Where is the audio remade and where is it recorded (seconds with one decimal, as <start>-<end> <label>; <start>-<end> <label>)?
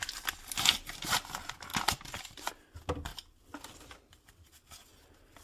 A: 0.0-1.7 recorded; 1.7-2.5 remade; 2.5-5.4 recorded